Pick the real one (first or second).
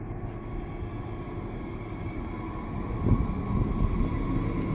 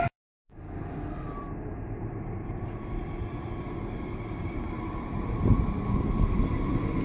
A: first